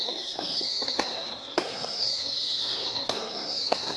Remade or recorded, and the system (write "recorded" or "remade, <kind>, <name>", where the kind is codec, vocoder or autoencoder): remade, codec, SNAC